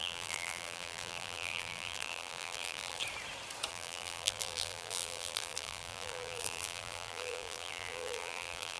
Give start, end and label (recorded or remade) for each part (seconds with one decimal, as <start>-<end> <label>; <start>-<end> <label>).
0.0-3.0 remade; 3.0-3.7 recorded; 3.7-8.8 remade